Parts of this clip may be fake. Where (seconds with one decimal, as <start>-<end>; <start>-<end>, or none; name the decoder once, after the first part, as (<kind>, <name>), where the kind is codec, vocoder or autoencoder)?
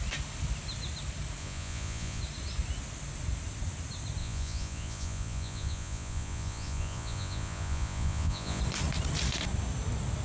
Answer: 1.4-2.2 (vocoder, Vocos); 4.2-8.6